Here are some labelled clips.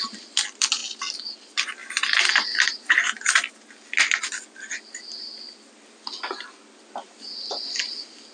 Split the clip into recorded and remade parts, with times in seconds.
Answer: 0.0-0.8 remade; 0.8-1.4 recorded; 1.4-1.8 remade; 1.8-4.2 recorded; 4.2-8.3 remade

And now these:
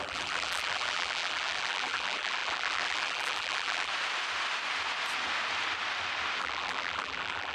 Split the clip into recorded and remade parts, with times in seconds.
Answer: 0.0-3.9 remade; 3.9-6.4 recorded; 6.4-7.5 remade

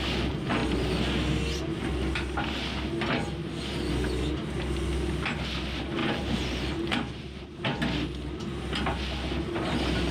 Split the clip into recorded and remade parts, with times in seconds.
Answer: 0.0-6.0 recorded; 6.0-7.4 remade; 7.4-10.1 recorded

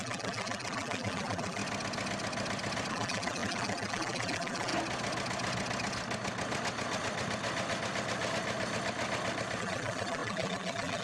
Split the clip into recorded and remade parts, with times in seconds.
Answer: 0.0-1.6 remade; 1.6-2.9 recorded; 2.9-4.7 remade; 4.7-9.6 recorded; 9.6-11.0 remade

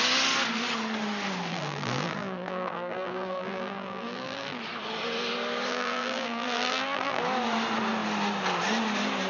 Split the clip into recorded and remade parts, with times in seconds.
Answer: 0.0-1.5 recorded; 1.5-4.6 remade; 4.6-5.7 recorded; 5.7-7.2 remade; 7.2-9.3 recorded